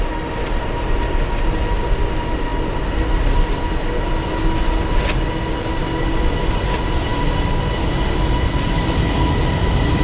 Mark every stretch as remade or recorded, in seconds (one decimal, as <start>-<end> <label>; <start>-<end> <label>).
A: 0.0-10.0 recorded